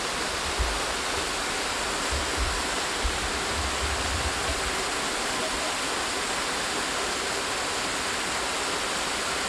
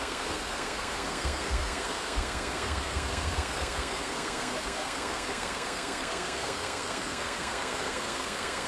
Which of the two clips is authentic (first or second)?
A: first